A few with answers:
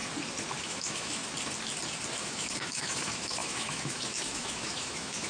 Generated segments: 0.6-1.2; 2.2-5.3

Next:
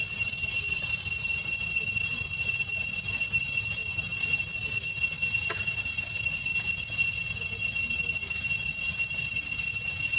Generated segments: 0.0-6.5; 7.8-10.2

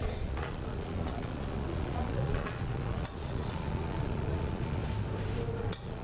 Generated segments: 0.0-4.8; 5.6-6.0

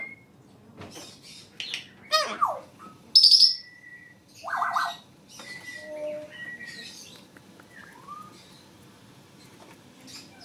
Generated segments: none

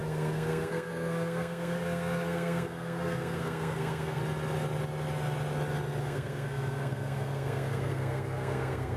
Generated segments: 0.0-4.2; 6.0-9.0

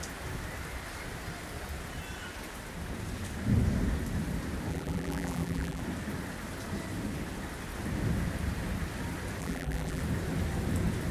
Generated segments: 4.7-5.8; 9.4-10.0